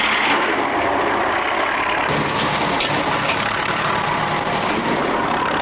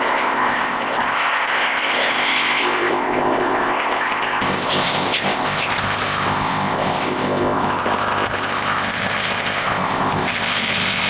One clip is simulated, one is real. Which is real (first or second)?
first